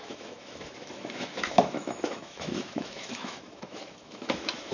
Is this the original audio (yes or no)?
no